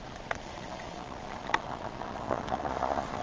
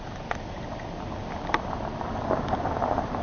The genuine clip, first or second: second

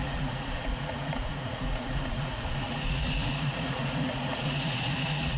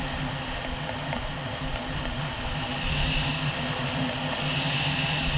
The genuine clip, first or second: second